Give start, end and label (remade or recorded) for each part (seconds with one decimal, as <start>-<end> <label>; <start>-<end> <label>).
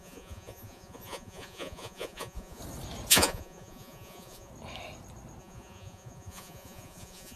0.0-2.6 remade; 2.6-3.1 recorded; 3.1-4.5 remade; 4.5-5.4 recorded; 5.4-7.4 remade